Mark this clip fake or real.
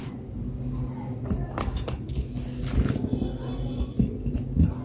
real